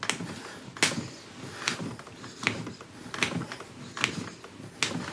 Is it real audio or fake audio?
real